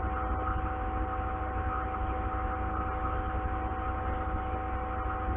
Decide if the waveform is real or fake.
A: real